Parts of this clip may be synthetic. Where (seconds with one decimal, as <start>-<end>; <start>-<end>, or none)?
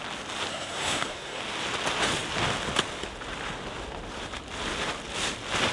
0.5-1.4